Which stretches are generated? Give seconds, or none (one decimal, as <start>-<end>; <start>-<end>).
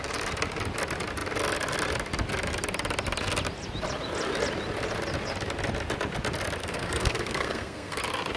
6.6-8.0